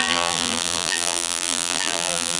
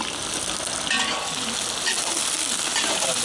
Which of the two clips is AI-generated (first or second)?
first